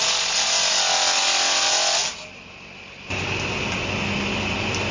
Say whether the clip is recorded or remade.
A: recorded